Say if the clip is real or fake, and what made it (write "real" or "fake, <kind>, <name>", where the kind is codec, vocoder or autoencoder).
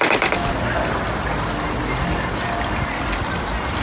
real